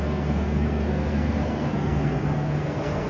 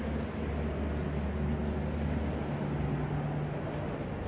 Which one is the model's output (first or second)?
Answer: first